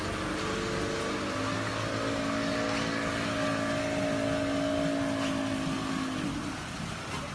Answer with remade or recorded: recorded